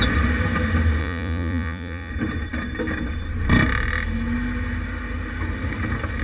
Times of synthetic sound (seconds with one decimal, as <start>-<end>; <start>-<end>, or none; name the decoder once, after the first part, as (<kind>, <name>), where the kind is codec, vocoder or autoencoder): 1.0-2.1 (vocoder, Vocos)